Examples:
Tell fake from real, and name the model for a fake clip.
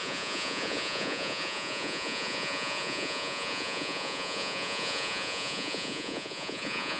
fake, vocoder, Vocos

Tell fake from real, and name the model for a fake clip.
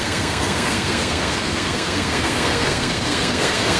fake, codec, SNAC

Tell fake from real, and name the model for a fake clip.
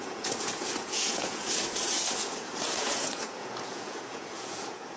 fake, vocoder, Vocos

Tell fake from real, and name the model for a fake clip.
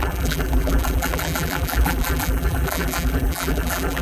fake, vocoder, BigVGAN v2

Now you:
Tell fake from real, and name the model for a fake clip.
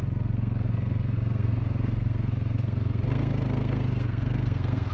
fake, codec, SNAC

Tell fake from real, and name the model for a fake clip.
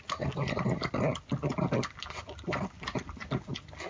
real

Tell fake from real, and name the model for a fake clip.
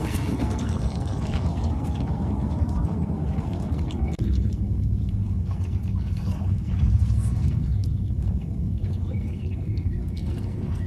fake, codec, SNAC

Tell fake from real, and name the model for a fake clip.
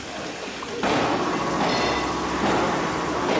real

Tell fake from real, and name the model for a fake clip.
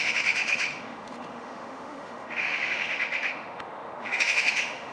fake, autoencoder, DAC-VAE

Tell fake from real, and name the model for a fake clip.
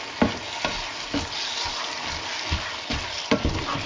real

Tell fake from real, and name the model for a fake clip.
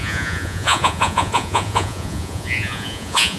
fake, vocoder, Vocos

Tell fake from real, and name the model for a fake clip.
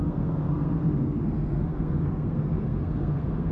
fake, codec, SNAC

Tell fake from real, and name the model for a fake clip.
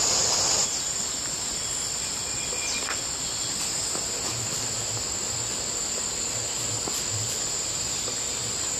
real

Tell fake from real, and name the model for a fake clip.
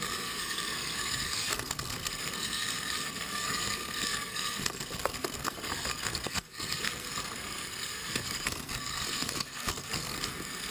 fake, codec, SNAC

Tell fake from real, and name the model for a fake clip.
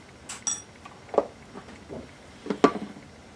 real